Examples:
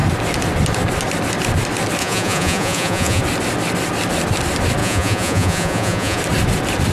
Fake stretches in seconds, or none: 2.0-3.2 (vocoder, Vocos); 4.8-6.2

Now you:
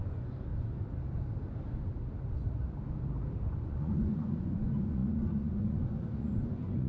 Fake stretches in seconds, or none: 0.0-0.5 (vocoder, Vocos); 3.4-6.9

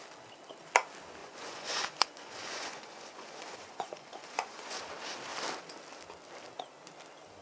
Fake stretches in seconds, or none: 1.2-4.8 (vocoder, Vocos)

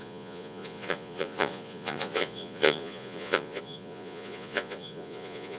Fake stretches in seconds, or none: 0.0-5.6 (vocoder, Vocos)

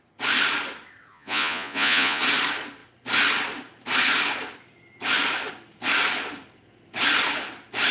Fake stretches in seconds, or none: 1.1-2.2 (vocoder, Vocos)

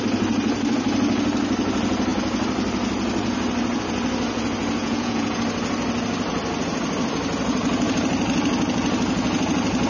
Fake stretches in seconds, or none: 4.8-5.4 (vocoder, Vocos)

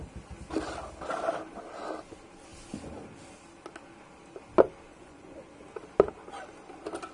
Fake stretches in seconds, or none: 4.9-5.5 (vocoder, Vocos)

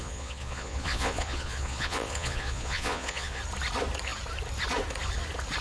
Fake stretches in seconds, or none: 0.0-3.4 (vocoder, Vocos)